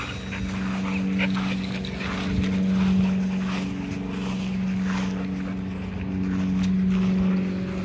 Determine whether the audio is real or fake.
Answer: real